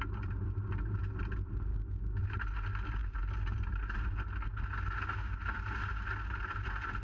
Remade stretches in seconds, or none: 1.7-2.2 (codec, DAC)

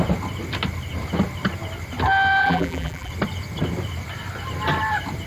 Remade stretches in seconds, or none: 2.4-3.1 (vocoder, BigVGAN v2)